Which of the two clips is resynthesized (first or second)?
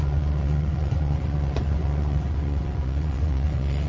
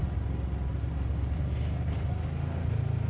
first